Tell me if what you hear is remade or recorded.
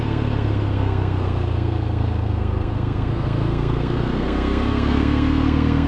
remade